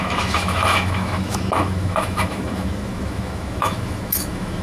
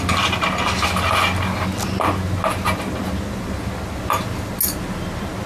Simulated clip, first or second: first